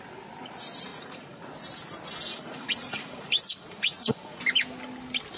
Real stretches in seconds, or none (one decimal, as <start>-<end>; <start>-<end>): 0.0-0.9; 1.4-2.3; 4.4-5.4